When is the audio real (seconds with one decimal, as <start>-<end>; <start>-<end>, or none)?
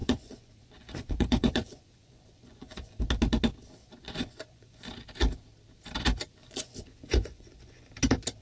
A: 3.0-3.8; 4.9-6.4; 7.9-8.4